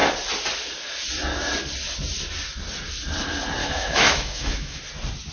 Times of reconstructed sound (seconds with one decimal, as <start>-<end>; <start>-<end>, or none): 3.6-4.8

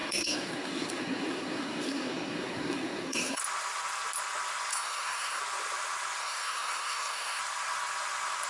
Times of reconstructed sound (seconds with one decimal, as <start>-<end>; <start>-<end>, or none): 0.0-3.4; 4.7-5.4; 6.2-7.4

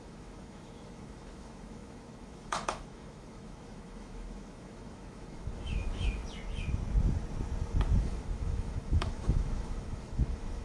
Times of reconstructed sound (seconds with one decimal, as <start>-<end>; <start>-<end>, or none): 0.0-6.2; 8.0-10.6

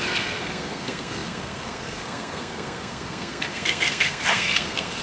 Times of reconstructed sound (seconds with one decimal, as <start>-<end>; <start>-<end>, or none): 0.0-5.0